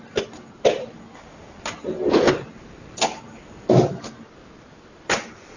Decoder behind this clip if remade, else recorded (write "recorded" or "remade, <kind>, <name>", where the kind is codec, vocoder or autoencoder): recorded